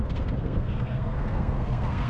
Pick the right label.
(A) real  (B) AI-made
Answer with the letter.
B